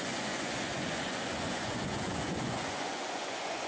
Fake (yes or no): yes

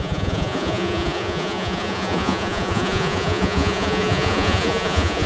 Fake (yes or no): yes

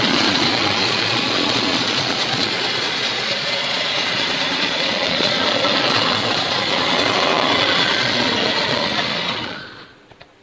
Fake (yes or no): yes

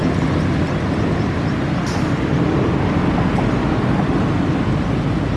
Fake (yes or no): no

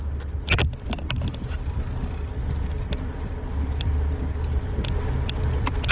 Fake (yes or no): no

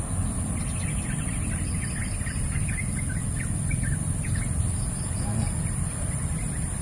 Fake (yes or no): no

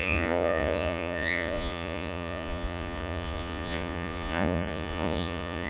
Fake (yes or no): yes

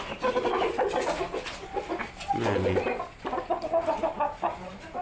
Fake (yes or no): no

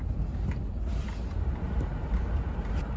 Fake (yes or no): no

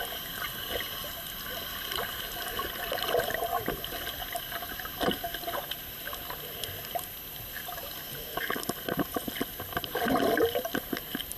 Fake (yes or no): no